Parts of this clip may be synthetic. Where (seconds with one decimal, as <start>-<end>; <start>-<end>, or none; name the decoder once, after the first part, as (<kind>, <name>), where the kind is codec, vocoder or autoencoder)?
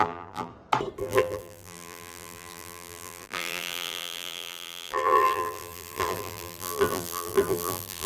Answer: 0.0-0.5 (vocoder, BigVGAN v2); 1.0-8.1